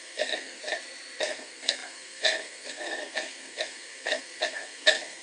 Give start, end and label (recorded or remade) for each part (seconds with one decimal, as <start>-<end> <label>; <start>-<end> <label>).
0.0-0.6 remade; 0.6-1.2 recorded; 1.2-5.2 remade